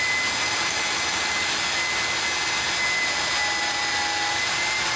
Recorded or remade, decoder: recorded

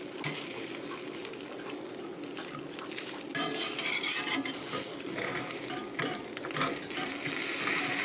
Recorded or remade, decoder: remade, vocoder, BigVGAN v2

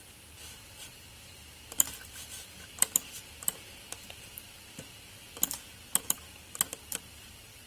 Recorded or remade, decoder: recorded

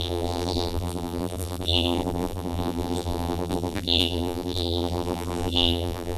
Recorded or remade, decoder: remade, vocoder, BigVGAN v2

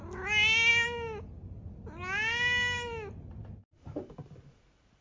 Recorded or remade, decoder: recorded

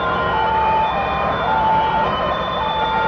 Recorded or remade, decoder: remade, vocoder, BigVGAN v2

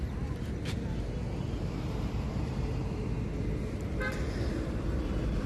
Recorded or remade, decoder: recorded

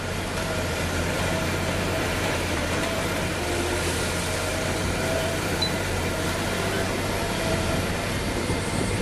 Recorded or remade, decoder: remade, vocoder, BigVGAN v2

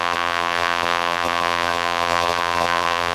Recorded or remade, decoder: remade, vocoder, BigVGAN v2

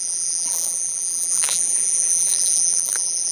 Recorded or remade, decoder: remade, vocoder, BigVGAN v2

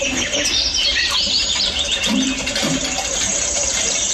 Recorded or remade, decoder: remade, vocoder, BigVGAN v2